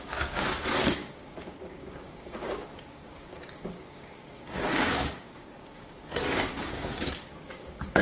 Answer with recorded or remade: remade